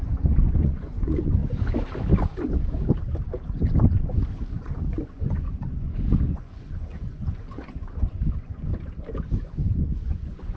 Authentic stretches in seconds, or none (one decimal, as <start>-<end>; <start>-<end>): 1.4-4.3; 8.7-9.3